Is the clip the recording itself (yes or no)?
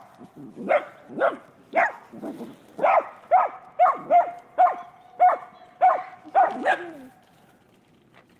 yes